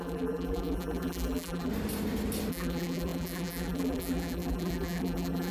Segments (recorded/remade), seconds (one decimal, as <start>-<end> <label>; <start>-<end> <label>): 0.0-1.7 remade; 1.7-2.5 recorded; 2.5-5.5 remade